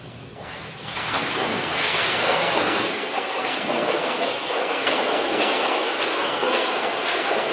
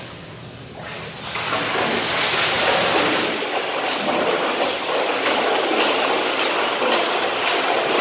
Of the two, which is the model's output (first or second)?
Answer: first